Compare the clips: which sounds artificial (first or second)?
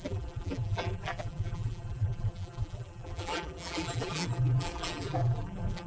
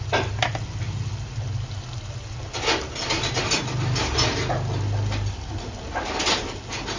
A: first